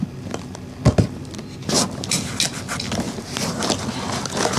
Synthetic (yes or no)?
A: no